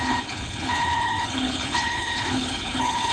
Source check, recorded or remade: remade